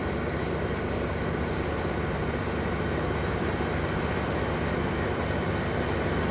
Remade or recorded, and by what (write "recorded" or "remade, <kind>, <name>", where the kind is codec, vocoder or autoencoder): recorded